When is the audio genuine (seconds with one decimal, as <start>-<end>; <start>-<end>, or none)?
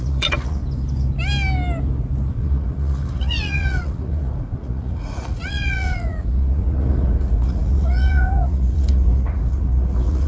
0.6-2.3